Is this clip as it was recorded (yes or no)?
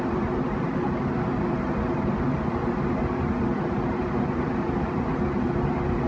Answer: yes